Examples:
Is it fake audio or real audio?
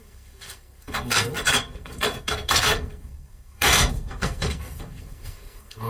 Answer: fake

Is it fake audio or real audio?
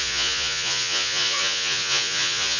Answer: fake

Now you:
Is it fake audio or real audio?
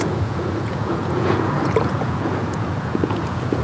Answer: fake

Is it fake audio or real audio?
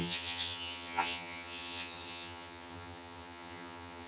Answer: fake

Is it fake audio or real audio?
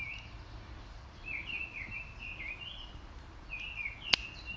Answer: real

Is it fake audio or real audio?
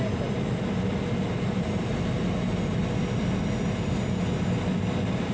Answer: real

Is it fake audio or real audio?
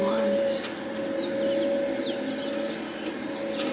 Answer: real